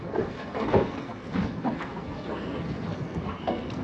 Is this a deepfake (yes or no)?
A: yes